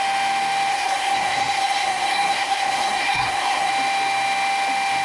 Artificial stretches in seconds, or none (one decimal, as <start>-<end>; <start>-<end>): 0.7-3.7